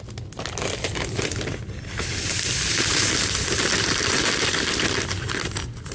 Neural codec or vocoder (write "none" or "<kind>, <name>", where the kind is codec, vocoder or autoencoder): none